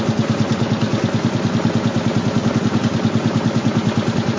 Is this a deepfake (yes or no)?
no